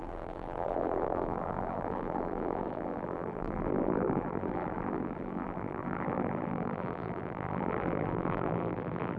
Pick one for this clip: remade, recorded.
remade